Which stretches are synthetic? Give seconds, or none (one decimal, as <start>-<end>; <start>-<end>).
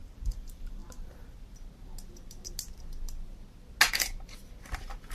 0.0-0.8; 3.9-5.1